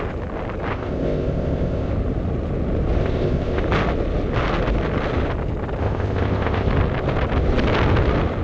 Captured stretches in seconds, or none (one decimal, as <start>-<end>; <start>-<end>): 0.0-0.7; 1.9-3.0; 3.6-5.8; 6.7-8.4

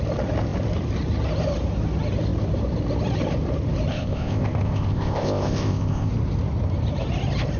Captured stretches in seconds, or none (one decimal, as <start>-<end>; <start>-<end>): 0.0-3.9; 6.1-7.6

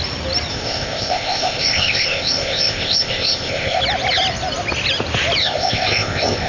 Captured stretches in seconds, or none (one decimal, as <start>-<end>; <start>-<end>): 0.0-0.5; 3.8-5.4

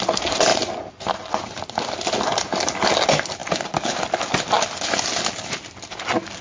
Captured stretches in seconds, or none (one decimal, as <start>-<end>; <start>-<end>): 0.0-6.4

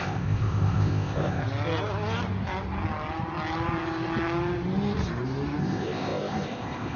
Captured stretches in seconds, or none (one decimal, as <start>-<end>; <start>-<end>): 1.4-5.6

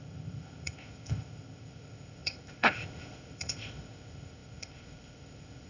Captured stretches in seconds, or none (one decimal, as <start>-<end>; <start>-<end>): none